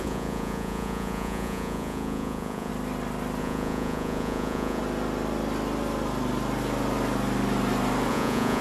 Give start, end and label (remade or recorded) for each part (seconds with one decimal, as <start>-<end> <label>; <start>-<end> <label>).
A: 0.0-2.7 remade; 2.7-3.4 recorded; 3.4-4.8 remade; 4.8-8.1 recorded; 8.1-8.6 remade